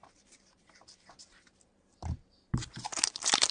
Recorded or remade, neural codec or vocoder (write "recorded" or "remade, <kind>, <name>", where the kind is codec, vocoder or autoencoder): remade, vocoder, BigVGAN v2